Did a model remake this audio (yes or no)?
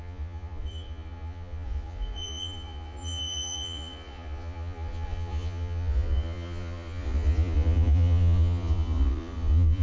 yes